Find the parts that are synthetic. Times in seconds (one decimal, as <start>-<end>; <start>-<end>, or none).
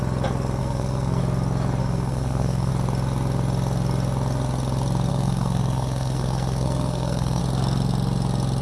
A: 0.6-1.2; 1.8-2.7; 5.1-7.4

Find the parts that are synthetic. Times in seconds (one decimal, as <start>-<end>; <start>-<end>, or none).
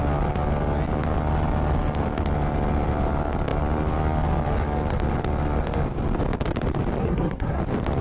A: 7.0-7.6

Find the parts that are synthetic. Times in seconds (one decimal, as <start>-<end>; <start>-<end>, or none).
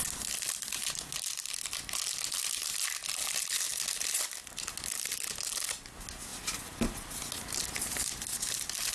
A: none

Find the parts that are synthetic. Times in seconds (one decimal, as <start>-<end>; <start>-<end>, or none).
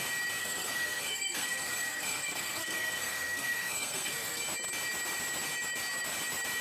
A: 0.4-4.4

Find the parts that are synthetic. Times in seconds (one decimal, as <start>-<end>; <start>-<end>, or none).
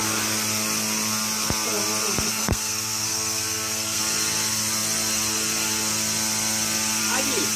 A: 2.3-4.0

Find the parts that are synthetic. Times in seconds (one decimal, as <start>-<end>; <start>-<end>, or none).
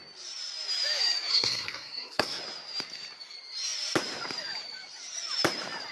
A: 1.3-2.4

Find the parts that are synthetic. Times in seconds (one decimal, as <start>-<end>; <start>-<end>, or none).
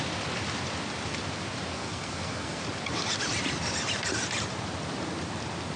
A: 1.7-2.6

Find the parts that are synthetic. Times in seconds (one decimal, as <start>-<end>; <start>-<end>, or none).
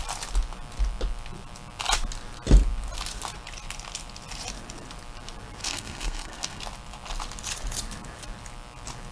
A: 5.6-6.6